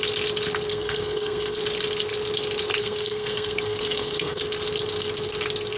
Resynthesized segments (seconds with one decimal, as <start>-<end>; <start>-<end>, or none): 0.7-1.6; 2.8-4.4